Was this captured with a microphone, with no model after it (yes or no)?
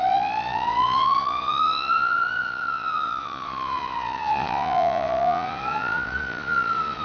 no